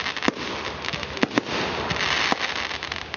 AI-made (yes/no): no